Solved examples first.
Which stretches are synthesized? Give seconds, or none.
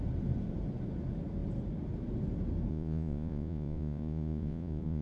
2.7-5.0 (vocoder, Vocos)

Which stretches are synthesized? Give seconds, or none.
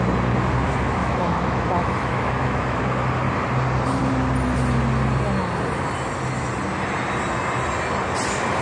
1.0-2.8 (autoencoder, DAC-VAE)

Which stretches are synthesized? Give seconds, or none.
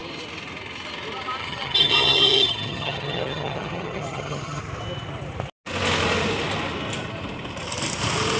1.4-4.6 (vocoder, HiFi-GAN)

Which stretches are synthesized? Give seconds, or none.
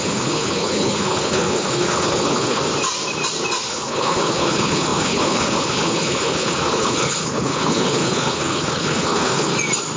0.0-2.6 (codec, HILCodec); 3.7-9.5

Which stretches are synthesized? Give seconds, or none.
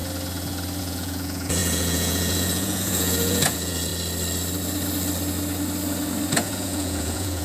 0.8-3.9 (vocoder, Vocos); 6.3-7.4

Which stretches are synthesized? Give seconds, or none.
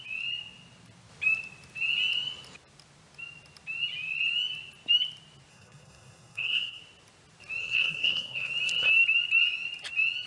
5.5-6.8 (codec, SNAC); 7.6-8.5